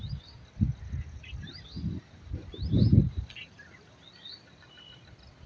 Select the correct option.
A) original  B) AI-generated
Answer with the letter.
A